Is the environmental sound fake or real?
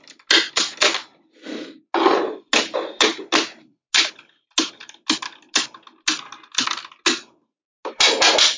real